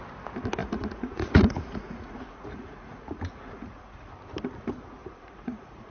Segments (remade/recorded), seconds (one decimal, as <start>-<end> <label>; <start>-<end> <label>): 0.0-0.6 recorded; 0.6-4.1 remade; 4.1-5.0 recorded; 5.0-5.9 remade